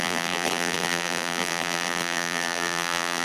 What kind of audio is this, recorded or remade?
remade